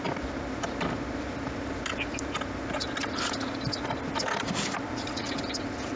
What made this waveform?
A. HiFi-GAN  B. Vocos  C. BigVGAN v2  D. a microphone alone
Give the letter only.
D